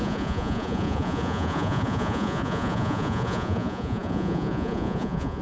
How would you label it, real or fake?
fake